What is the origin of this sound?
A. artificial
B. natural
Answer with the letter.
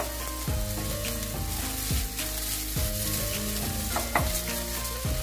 B